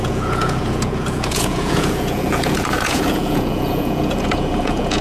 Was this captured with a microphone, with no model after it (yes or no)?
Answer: no